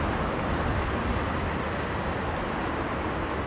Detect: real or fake real